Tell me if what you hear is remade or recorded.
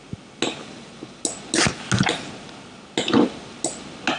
recorded